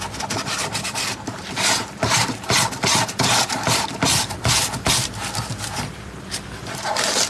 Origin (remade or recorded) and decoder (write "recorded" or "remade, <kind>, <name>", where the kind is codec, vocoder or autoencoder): remade, vocoder, BigVGAN v2